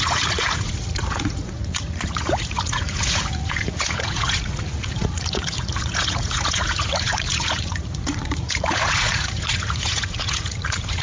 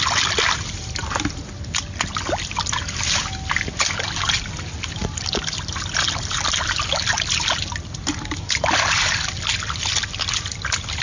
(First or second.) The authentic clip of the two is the second